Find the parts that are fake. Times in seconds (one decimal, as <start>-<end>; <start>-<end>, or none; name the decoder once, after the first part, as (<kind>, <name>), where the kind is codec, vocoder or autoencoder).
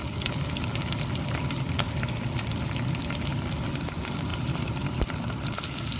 4.3-4.8 (vocoder, BigVGAN v2)